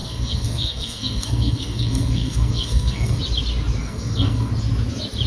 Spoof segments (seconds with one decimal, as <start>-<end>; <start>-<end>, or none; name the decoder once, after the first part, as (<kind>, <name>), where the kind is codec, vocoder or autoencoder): 0.0-3.2 (codec, SNAC); 3.8-4.5